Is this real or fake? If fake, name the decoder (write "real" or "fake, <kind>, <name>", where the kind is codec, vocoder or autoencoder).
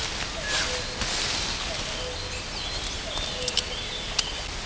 real